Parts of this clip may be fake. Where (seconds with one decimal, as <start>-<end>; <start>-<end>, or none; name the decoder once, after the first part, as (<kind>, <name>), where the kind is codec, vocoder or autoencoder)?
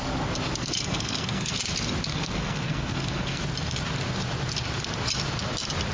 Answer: 0.6-1.6 (codec, SNAC); 2.1-3.4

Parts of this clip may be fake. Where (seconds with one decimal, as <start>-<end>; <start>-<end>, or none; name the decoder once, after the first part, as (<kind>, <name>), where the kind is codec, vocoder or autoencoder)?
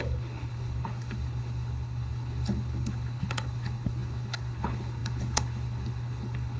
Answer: 0.0-6.6 (codec, HILCodec)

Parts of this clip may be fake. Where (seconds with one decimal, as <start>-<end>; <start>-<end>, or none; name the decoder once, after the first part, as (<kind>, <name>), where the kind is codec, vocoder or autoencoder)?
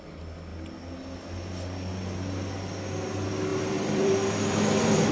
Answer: 3.5-5.1 (vocoder, BigVGAN v2)